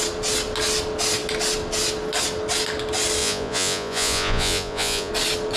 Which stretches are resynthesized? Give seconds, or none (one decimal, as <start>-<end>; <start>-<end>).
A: 3.2-5.1